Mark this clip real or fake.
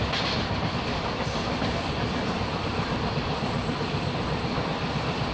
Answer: fake